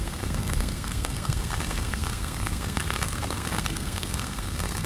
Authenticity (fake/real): fake